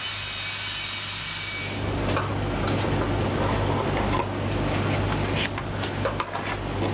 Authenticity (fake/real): real